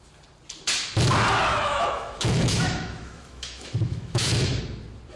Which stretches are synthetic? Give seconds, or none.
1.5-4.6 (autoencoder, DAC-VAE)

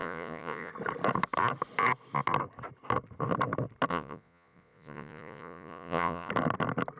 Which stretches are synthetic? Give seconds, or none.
0.0-0.7 (vocoder, Vocos); 3.9-6.3

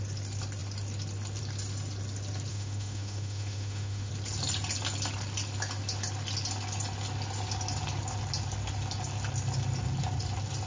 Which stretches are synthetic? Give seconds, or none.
2.5-4.1 (autoencoder, DAC-VAE)

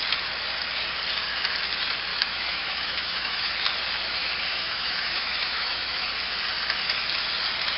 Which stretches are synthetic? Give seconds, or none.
2.1-3.5 (autoencoder, DAC-VAE); 4.5-6.1

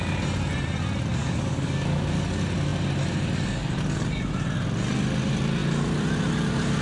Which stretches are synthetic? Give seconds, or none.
1.2-2.2 (codec, DAC)

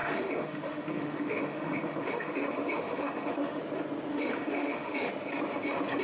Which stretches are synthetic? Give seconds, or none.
0.0-3.6 (autoencoder, DAC-VAE); 4.1-5.1

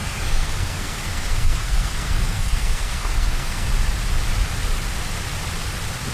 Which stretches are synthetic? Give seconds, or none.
0.0-3.7 (codec, SNAC)